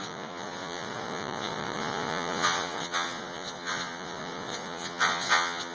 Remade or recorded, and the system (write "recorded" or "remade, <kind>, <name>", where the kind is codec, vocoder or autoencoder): remade, vocoder, Vocos